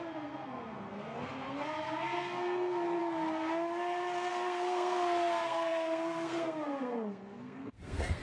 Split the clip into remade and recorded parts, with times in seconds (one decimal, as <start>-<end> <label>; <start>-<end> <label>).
0.0-3.0 remade; 3.0-4.3 recorded; 4.3-8.2 remade